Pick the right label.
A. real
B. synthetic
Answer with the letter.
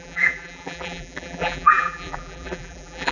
B